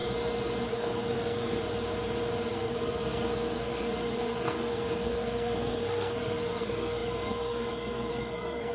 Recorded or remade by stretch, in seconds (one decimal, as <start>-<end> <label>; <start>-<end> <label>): 0.0-0.7 recorded; 0.7-1.6 remade; 1.6-2.5 recorded; 2.5-8.7 remade